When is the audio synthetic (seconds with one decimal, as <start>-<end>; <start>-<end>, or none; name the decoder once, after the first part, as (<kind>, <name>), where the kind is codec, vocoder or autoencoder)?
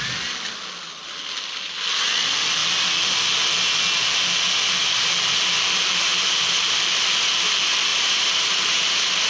7.9-9.3 (vocoder, BigVGAN v2)